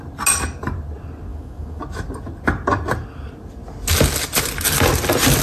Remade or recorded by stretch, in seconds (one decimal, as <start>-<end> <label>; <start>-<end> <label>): 0.0-1.3 recorded; 1.3-1.8 remade; 1.8-5.4 recorded